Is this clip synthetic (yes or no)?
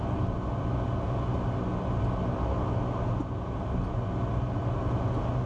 no